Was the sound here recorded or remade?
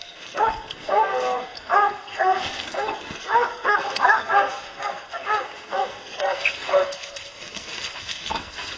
remade